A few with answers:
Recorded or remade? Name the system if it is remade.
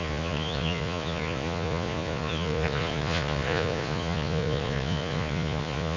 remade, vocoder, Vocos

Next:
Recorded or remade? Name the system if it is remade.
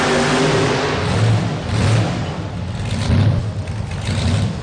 recorded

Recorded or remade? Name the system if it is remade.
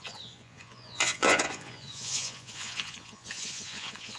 remade, vocoder, Vocos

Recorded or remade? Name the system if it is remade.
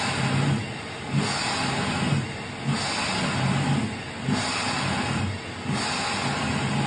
recorded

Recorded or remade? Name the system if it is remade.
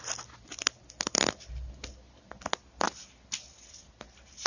recorded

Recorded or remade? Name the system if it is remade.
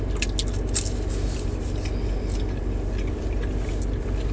recorded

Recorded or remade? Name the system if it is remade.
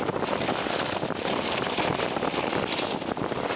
recorded